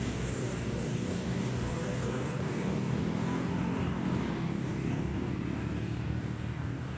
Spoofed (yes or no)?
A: yes